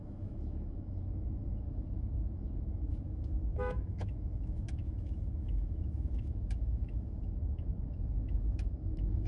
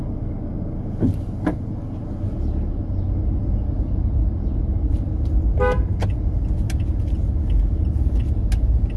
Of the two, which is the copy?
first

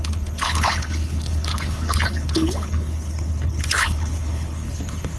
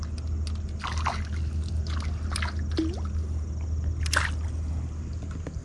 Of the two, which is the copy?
first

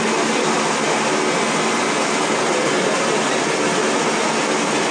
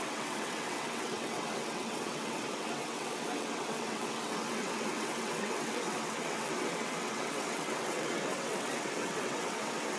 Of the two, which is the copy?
second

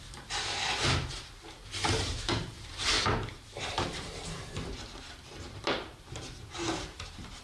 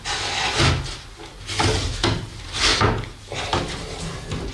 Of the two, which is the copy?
first